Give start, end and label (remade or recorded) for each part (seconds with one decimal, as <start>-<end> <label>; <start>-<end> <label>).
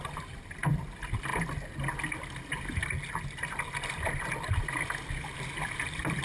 0.0-6.2 recorded